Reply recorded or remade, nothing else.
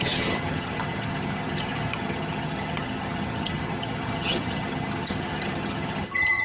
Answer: remade